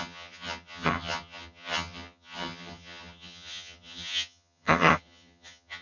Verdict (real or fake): fake